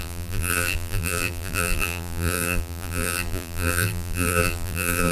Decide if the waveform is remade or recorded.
remade